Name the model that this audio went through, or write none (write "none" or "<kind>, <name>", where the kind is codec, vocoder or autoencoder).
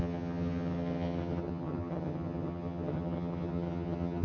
vocoder, HiFi-GAN